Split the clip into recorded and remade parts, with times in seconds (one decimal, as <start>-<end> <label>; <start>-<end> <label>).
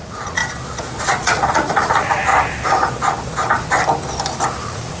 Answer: 0.0-0.4 remade; 0.4-1.0 recorded; 1.0-2.3 remade; 2.3-4.6 recorded; 4.6-5.0 remade